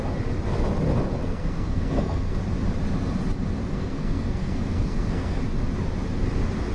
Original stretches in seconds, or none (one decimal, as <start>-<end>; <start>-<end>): 0.0-1.2; 2.4-3.6; 5.4-6.7